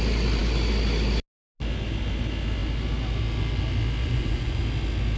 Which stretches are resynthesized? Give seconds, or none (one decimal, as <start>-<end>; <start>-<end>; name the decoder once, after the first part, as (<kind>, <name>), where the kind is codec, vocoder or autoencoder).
4.0-4.6 (vocoder, Vocos)